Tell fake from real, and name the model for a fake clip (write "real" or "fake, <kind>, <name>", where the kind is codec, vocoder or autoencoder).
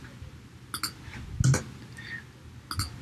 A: real